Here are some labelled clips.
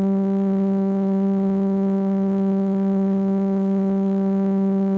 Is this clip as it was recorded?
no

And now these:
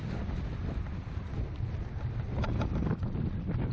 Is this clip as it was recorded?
yes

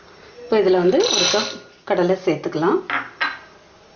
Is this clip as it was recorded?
yes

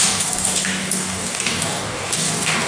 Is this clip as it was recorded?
no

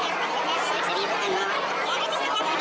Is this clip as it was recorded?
yes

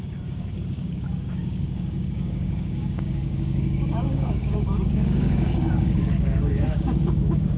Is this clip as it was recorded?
no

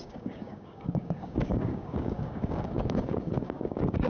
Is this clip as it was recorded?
no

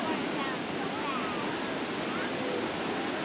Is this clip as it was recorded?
yes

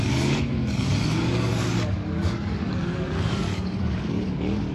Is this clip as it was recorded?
no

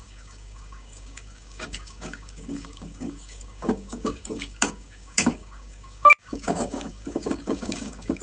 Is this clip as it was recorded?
no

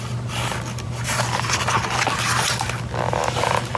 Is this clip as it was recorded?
yes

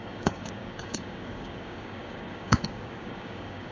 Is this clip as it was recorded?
no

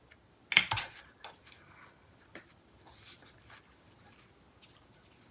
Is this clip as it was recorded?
yes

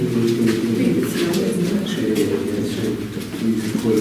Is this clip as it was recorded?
yes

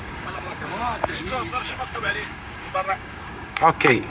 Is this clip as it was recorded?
no